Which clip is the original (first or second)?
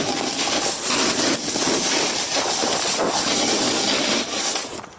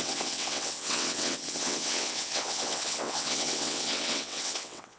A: first